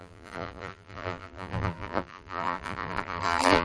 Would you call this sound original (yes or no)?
no